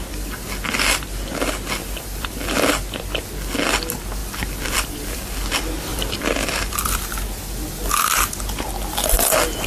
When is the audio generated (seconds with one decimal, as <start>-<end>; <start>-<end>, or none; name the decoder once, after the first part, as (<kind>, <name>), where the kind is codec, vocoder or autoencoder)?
1.8-2.7 (vocoder, BigVGAN v2); 4.2-5.2; 5.9-7.4